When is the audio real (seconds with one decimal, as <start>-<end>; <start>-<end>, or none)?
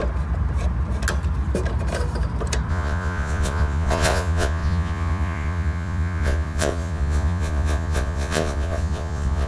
0.0-2.7